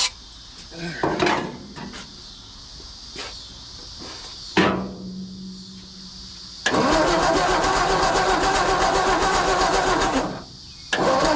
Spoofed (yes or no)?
no